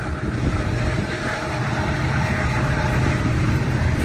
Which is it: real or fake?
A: fake